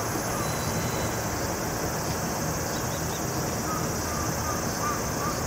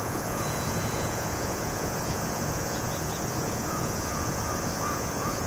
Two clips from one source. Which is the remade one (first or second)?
second